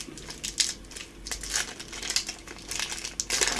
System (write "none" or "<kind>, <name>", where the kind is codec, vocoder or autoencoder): none